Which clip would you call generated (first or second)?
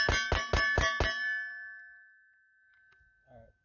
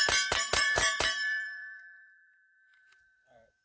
second